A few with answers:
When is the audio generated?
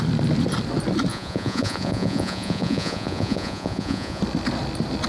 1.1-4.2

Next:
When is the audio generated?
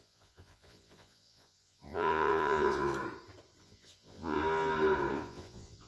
0.0-2.9; 3.6-4.4; 5.1-5.9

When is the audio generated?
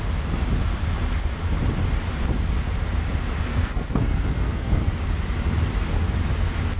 3.5-4.9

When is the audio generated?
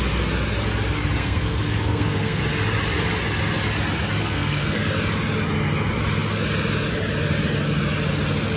1.2-2.4; 4.2-4.8